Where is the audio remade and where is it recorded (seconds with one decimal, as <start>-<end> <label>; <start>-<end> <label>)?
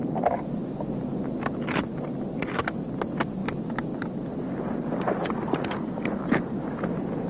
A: 0.0-7.3 recorded